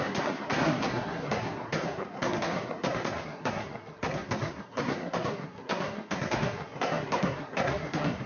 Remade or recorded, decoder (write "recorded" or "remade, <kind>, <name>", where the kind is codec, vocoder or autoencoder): remade, codec, SNAC